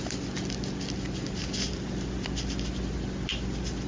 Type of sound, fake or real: real